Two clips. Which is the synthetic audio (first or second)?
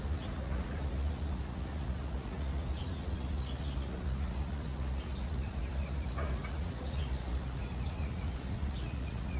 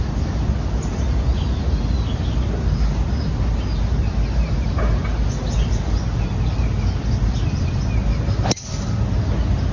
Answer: first